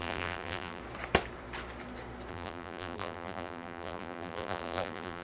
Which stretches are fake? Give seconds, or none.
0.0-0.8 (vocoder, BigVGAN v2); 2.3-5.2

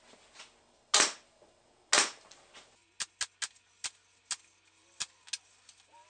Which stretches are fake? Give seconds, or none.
none

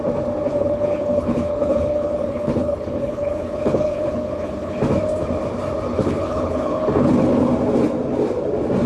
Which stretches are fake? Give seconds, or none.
0.5-4.8 (codec, HILCodec); 5.9-7.1

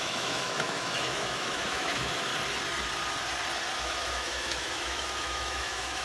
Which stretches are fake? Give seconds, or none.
0.0-2.3 (autoencoder, DAC-VAE); 3.8-6.0